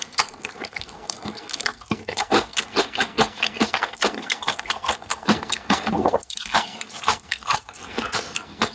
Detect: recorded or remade remade